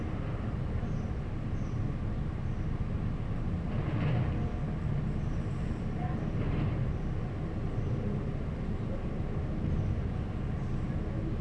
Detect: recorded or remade recorded